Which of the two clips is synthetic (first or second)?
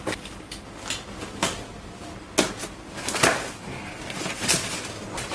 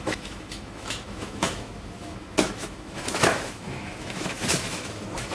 second